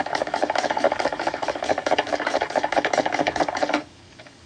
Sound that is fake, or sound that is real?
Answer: fake